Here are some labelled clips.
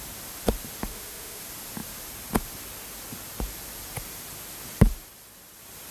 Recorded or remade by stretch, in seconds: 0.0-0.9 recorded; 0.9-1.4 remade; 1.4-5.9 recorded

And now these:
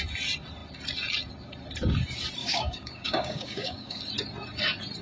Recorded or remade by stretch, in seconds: 0.0-2.4 recorded; 2.4-4.0 remade; 4.0-5.0 recorded

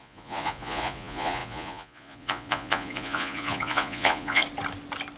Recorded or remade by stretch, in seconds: 0.0-4.4 remade; 4.4-5.2 recorded

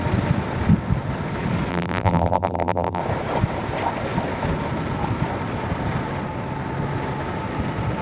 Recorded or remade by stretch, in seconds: 0.0-1.7 recorded; 1.7-3.0 remade; 3.0-8.0 recorded

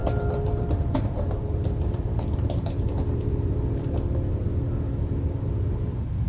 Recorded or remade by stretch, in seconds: 0.0-3.8 remade; 3.8-6.3 recorded

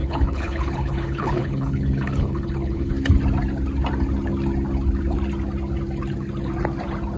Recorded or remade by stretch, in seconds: 0.0-2.9 remade; 2.9-7.2 recorded

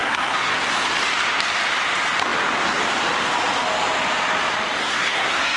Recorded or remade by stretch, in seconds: 0.0-0.5 remade; 0.5-4.8 recorded; 4.8-5.6 remade